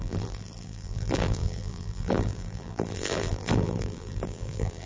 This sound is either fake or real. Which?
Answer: fake